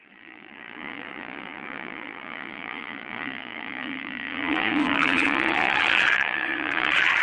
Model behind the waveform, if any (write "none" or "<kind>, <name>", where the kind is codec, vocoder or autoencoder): vocoder, Vocos